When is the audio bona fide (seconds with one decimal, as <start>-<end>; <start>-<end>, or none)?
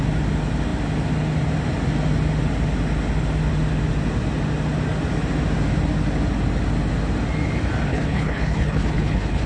0.0-7.9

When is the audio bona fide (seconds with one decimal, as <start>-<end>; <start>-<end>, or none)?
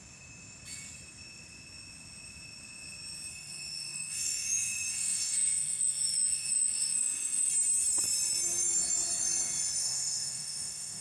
0.0-3.3; 7.5-9.8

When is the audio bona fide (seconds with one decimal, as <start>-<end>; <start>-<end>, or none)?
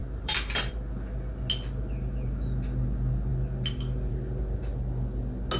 0.7-5.6